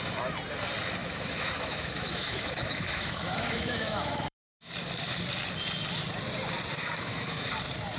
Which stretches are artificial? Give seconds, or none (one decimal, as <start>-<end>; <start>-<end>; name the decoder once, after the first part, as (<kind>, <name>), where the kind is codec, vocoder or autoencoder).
1.0-4.7 (autoencoder, DAC-VAE); 6.8-7.5